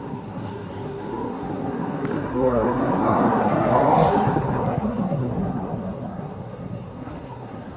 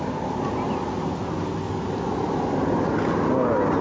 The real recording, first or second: second